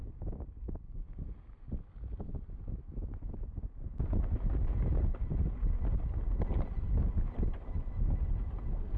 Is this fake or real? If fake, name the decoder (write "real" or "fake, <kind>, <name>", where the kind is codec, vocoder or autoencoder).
real